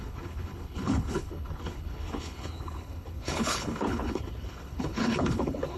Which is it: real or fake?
fake